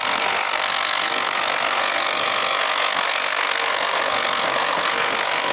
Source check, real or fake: fake